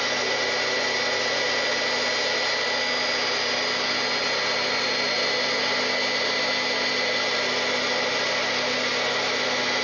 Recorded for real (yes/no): yes